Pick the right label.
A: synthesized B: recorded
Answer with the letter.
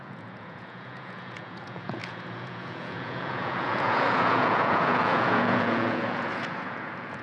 A